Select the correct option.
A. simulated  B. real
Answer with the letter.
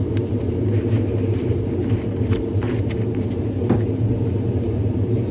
A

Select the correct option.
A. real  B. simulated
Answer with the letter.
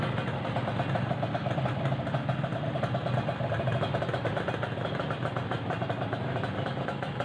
A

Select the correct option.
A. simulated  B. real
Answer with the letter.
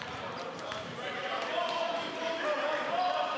A